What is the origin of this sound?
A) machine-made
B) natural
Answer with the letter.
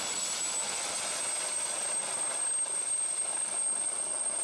B